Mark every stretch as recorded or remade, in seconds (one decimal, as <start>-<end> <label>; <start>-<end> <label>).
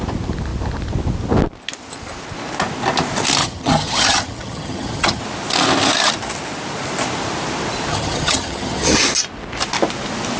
0.0-3.4 recorded; 3.4-5.2 remade; 5.2-7.9 recorded; 7.9-9.0 remade; 9.0-10.4 recorded